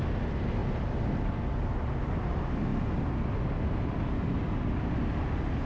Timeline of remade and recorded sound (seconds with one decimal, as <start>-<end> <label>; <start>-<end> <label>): 0.0-5.7 recorded